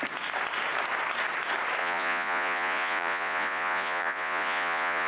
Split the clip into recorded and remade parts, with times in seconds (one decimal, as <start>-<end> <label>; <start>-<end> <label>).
0.0-1.8 recorded; 1.8-5.1 remade